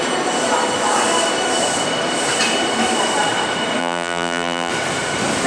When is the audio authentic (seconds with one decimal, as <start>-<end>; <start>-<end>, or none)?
0.0-3.8; 4.7-5.5